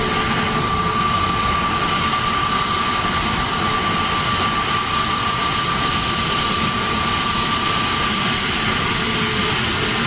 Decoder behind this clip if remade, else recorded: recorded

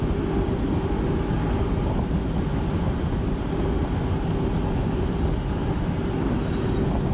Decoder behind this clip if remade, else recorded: recorded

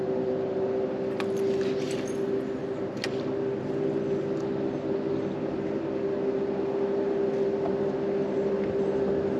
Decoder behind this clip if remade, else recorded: recorded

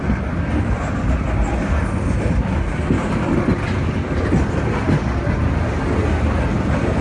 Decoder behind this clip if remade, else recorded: recorded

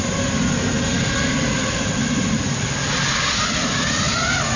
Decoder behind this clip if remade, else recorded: recorded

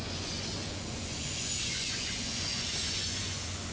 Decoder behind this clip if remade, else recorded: remade, vocoder, Vocos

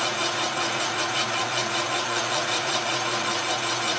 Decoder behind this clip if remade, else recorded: remade, vocoder, Vocos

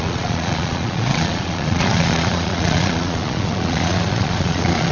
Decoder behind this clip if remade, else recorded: remade, vocoder, Vocos